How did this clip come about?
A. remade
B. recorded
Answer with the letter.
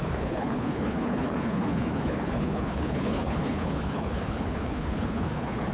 A